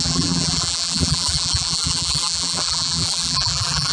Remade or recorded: remade